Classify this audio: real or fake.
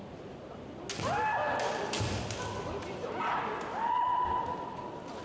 real